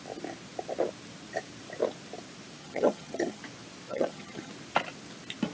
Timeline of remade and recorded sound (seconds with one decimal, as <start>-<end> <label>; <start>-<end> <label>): 0.0-2.6 recorded; 2.6-3.4 remade; 3.4-3.9 recorded; 3.9-4.5 remade; 4.5-5.5 recorded

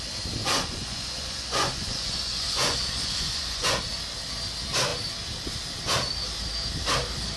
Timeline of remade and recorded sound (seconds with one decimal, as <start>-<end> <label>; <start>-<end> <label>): 0.0-0.4 recorded; 0.4-3.8 remade; 3.8-7.4 recorded

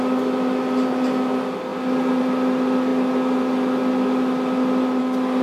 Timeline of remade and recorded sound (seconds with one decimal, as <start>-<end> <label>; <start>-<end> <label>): 0.0-5.4 recorded

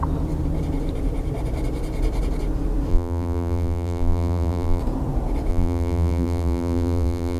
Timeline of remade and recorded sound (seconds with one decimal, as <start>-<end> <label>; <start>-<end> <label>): 0.0-2.9 recorded; 2.9-4.8 remade; 4.8-5.5 recorded; 5.5-7.4 remade

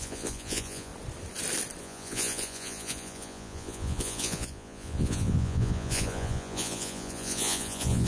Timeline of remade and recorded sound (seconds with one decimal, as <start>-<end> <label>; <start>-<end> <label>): 0.0-0.9 remade; 0.9-1.8 recorded; 1.8-8.1 remade

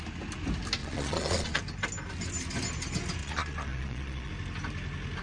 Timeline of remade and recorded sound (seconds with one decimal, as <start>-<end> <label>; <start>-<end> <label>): 0.0-0.8 recorded; 0.8-1.6 remade; 1.6-3.2 recorded; 3.2-4.3 remade; 4.3-5.2 recorded

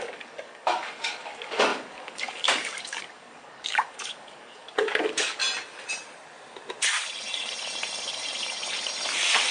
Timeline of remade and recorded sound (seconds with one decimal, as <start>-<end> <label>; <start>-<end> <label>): 0.0-5.4 remade; 5.4-9.5 recorded

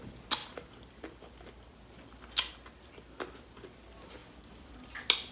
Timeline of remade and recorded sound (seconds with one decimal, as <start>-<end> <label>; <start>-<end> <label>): 0.0-0.4 recorded; 0.4-1.3 remade; 1.3-4.2 recorded; 4.2-4.7 remade; 4.7-5.3 recorded